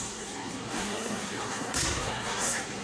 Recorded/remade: remade